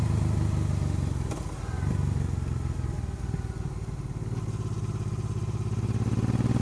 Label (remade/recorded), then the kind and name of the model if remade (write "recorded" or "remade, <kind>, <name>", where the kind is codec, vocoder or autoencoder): recorded